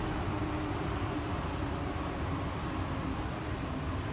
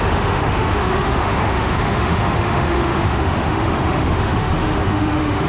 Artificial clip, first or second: second